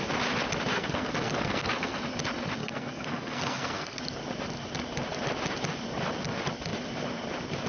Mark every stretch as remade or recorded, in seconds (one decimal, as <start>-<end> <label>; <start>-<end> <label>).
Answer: 0.0-0.7 recorded; 0.7-2.0 remade; 2.0-2.6 recorded; 2.6-4.0 remade; 4.0-7.7 recorded